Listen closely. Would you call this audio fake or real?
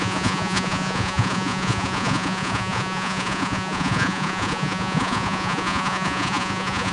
fake